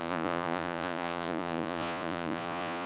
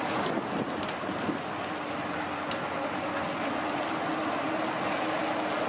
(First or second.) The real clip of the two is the second